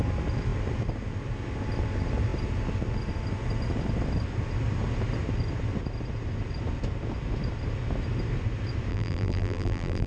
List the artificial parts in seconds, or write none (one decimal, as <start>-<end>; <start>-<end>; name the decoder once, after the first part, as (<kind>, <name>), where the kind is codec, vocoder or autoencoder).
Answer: 8.9-10.1 (vocoder, BigVGAN v2)